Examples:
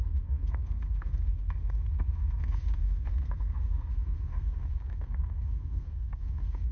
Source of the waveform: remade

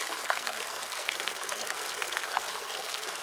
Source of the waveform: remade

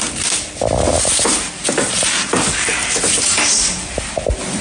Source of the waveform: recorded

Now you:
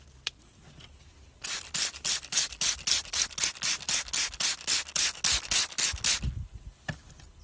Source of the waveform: recorded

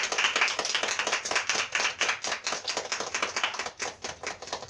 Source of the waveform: recorded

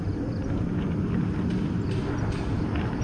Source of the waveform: recorded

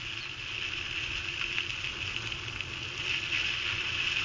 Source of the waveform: recorded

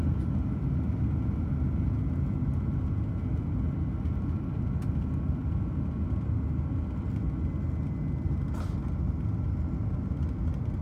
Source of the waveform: recorded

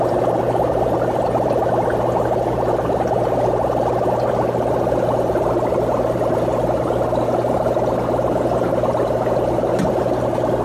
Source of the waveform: recorded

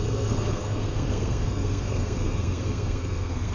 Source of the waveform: remade